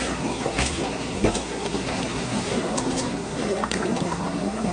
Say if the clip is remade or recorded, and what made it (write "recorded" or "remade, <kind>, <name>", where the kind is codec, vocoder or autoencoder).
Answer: remade, codec, SNAC